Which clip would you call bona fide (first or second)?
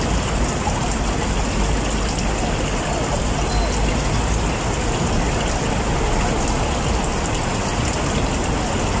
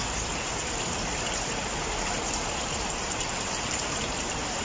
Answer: first